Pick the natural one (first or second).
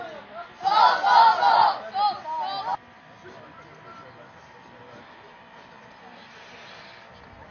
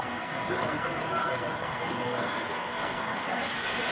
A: first